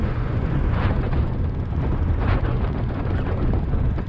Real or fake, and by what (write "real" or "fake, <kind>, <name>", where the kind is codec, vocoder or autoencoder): fake, vocoder, Vocos